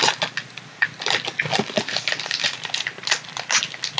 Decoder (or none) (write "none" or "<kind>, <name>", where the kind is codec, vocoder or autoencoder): none